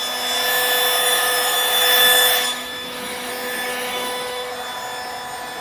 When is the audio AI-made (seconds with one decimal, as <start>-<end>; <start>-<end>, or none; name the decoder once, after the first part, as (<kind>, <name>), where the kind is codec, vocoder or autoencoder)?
1.0-3.3 (autoencoder, DAC-VAE); 3.7-4.5